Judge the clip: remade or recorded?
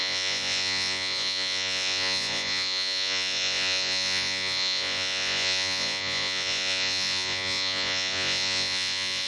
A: remade